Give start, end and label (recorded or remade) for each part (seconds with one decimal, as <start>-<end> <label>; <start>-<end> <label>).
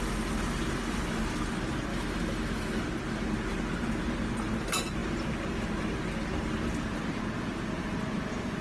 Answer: 0.0-1.9 recorded; 1.9-2.8 remade; 2.8-8.6 recorded